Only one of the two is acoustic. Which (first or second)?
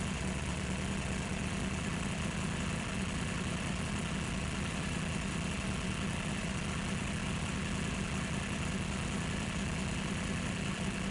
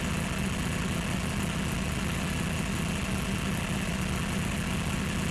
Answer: second